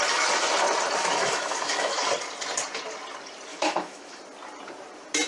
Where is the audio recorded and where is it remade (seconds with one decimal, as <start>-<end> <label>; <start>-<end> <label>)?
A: 0.0-1.0 recorded; 1.0-2.1 remade; 2.1-3.5 recorded; 3.5-4.2 remade; 4.2-5.3 recorded